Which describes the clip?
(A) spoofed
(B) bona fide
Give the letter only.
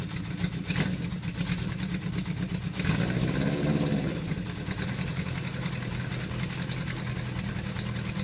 B